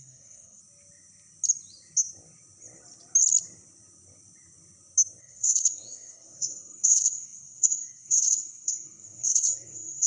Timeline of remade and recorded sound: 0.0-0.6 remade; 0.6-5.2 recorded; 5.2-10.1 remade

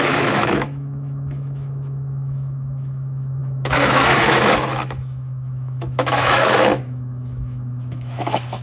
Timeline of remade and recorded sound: 0.0-8.6 remade

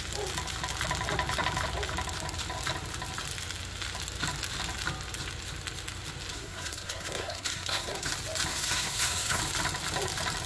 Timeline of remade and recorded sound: 0.0-6.3 recorded; 6.3-8.1 remade; 8.1-8.5 recorded; 8.5-9.4 remade; 9.4-10.5 recorded

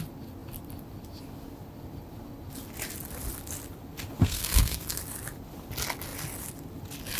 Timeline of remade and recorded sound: 0.0-4.2 recorded; 4.2-5.0 remade; 5.0-7.2 recorded

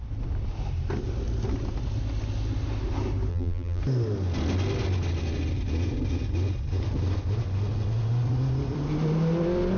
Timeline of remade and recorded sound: 0.0-3.3 recorded; 3.3-3.8 remade; 3.8-9.8 recorded

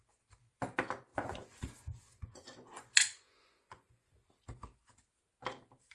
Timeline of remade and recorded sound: 0.0-1.1 recorded; 1.1-4.1 remade; 4.1-5.9 recorded